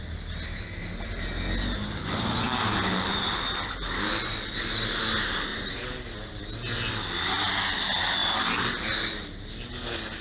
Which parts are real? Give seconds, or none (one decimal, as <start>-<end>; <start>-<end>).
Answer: 0.0-5.5; 6.4-10.2